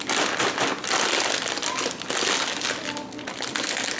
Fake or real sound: real